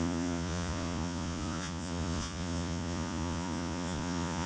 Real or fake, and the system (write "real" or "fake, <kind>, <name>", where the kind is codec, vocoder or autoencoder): fake, vocoder, Vocos